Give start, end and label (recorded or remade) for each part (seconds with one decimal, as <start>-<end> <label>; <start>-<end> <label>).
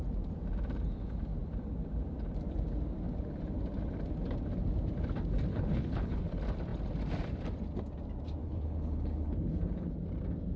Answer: 0.0-5.5 recorded; 5.5-6.2 remade; 6.2-8.4 recorded; 8.4-9.9 remade; 9.9-10.6 recorded